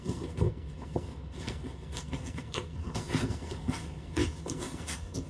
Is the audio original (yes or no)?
no